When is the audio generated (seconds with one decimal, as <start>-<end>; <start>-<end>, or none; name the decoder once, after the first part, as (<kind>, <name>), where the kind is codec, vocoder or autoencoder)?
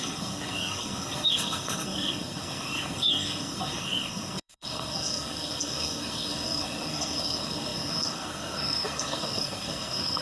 0.0-10.2 (codec, SNAC)